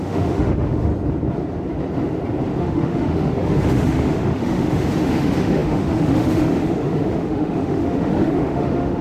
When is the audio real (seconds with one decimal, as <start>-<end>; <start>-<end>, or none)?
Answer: 0.9-2.6